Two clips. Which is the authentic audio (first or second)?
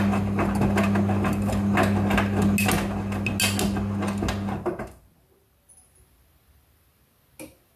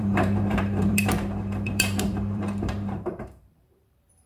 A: first